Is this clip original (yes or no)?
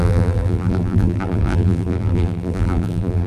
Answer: no